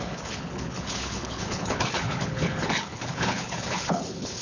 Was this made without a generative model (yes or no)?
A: no